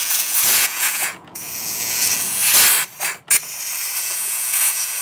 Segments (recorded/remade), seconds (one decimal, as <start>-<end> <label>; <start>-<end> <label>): 0.0-2.4 remade; 2.4-4.0 recorded; 4.0-5.0 remade